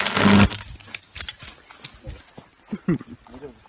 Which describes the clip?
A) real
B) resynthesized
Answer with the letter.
A